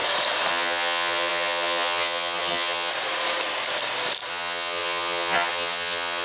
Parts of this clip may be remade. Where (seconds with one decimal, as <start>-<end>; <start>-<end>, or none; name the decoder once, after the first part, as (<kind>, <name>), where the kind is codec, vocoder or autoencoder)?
0.5-2.9 (vocoder, HiFi-GAN); 4.3-6.2

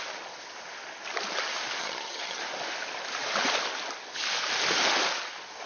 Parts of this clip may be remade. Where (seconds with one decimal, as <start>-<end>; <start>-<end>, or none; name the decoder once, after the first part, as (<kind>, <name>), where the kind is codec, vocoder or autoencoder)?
1.8-2.4 (vocoder, HiFi-GAN)

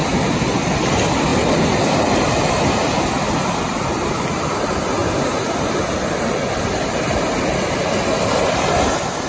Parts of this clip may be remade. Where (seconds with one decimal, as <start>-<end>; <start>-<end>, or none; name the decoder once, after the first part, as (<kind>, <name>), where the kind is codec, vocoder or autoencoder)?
none